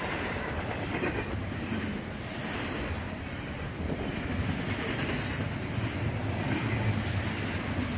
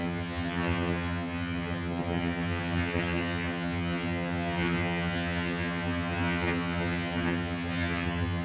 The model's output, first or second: second